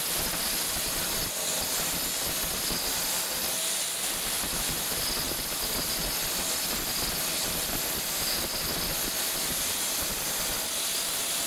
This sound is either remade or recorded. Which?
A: recorded